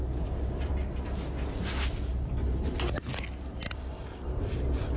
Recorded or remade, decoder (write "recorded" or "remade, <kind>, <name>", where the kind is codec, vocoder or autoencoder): recorded